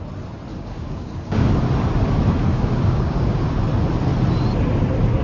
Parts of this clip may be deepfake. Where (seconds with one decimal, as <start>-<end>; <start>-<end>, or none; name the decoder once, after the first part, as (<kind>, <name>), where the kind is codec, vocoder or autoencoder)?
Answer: 0.5-1.5 (codec, DAC); 2.5-3.4